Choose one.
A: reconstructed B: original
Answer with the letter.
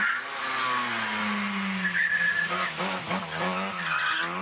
B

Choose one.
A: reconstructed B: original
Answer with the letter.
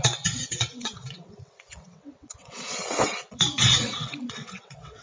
A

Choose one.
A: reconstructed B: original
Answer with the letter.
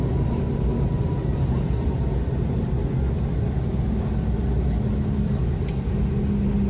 B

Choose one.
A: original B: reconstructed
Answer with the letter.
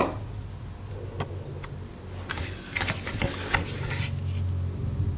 A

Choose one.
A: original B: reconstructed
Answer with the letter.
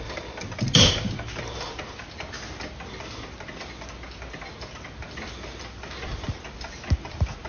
A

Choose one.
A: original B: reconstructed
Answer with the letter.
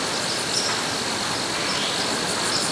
A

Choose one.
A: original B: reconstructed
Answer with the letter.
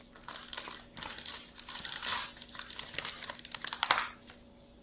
A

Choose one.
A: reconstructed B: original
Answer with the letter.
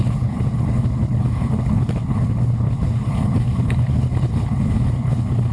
A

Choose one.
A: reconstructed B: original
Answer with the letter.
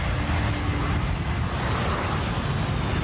B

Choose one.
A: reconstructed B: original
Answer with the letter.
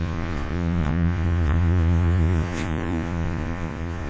A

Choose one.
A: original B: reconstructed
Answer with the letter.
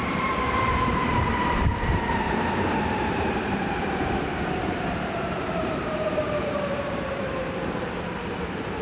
B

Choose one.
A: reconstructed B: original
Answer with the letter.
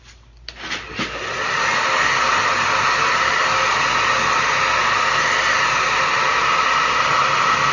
B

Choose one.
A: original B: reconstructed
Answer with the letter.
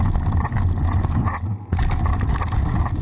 A